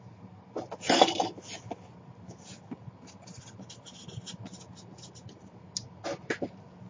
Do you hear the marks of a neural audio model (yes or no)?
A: no